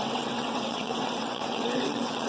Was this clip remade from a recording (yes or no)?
yes